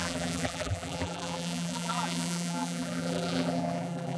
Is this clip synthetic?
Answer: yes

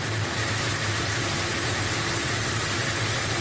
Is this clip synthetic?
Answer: no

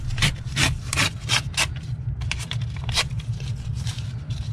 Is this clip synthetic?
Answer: yes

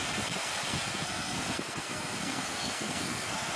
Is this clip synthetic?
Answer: yes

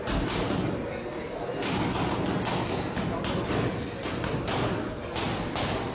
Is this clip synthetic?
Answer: no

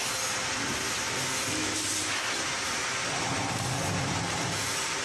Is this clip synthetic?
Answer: no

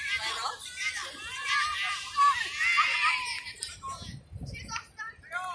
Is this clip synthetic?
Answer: no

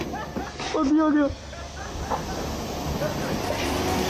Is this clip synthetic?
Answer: no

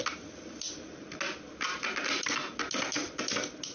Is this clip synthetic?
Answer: no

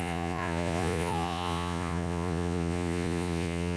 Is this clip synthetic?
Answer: yes